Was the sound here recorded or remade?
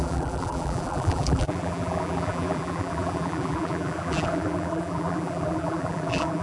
remade